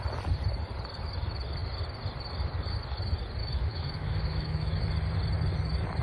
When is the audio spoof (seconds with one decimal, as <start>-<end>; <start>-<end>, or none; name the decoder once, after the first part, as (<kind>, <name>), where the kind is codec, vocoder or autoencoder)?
3.4-4.8 (autoencoder, DAC-VAE)

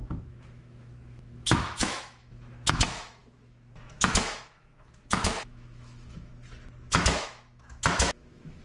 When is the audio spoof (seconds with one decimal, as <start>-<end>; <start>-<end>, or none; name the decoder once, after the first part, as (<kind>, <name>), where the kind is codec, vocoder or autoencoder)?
0.0-6.3 (autoencoder, DAC-VAE); 6.9-8.6

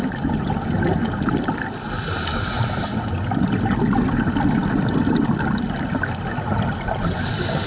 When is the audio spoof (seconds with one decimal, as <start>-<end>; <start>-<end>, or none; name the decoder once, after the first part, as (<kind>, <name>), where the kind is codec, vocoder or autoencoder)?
none

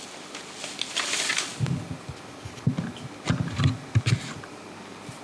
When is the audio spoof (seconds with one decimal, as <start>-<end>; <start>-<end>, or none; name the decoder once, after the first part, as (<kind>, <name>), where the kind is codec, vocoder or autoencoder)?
none